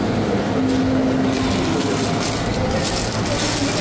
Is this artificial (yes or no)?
no